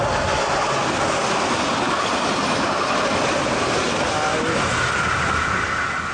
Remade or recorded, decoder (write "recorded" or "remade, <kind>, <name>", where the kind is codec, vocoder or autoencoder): recorded